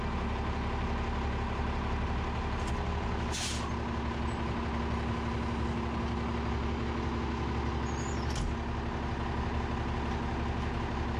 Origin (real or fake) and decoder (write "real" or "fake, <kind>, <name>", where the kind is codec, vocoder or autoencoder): real